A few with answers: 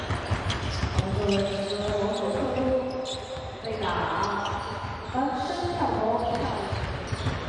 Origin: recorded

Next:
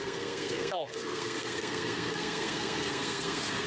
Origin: remade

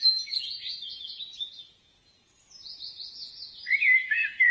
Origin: remade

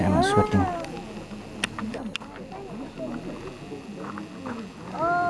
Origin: recorded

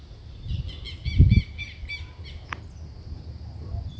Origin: recorded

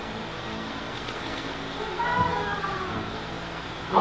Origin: remade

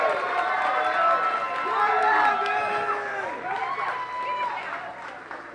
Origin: recorded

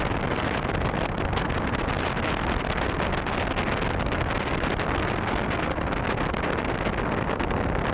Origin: recorded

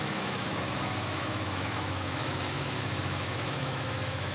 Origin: remade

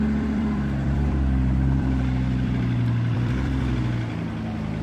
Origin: remade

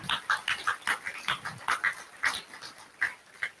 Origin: recorded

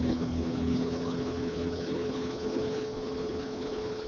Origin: remade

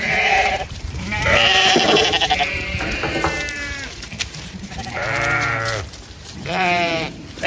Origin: remade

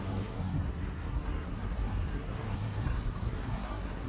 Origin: remade